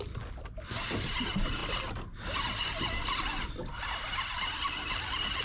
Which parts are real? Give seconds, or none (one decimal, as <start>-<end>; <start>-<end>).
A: 0.0-5.4